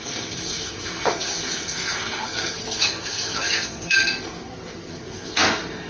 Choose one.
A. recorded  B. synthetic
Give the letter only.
B